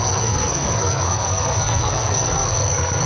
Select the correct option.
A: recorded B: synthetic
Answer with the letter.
B